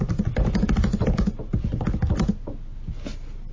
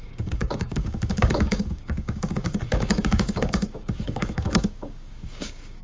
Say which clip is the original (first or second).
first